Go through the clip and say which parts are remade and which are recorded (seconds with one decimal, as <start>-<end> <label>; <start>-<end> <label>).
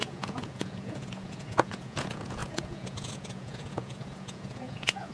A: 0.0-5.1 remade